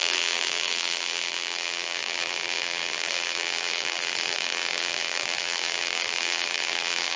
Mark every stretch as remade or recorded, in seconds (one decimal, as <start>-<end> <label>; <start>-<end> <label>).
0.0-7.2 remade

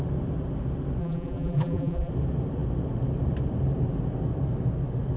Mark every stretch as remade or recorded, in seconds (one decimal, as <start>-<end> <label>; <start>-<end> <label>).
0.0-1.0 recorded; 1.0-2.1 remade; 2.1-5.2 recorded

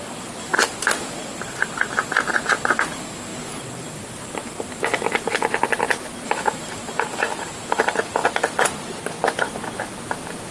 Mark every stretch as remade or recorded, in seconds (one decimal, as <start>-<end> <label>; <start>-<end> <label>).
0.0-10.5 recorded

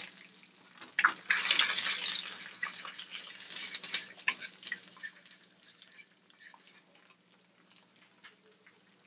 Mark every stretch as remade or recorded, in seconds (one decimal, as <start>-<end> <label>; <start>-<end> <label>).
0.0-2.6 recorded; 2.6-5.9 remade; 5.9-9.1 recorded

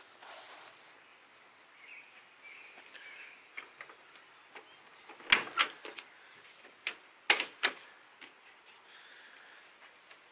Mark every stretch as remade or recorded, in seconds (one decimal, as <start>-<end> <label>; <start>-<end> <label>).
0.0-10.3 recorded

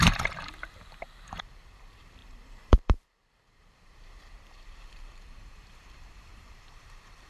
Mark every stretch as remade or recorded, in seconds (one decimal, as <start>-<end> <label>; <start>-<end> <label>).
0.0-7.3 remade

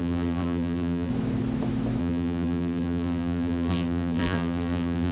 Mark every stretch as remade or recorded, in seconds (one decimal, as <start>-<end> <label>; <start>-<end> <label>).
0.0-1.1 remade; 1.1-2.0 recorded; 2.0-5.1 remade